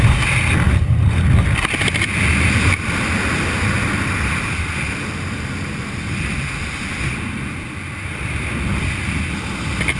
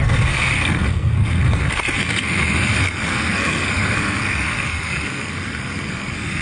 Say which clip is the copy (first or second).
second